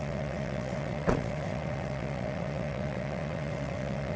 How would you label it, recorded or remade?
remade